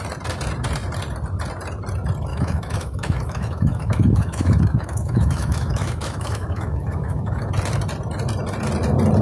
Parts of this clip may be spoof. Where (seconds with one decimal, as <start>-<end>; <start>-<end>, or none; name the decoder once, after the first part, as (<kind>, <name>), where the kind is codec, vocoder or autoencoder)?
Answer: 2.3-7.5 (autoencoder, DAC-VAE)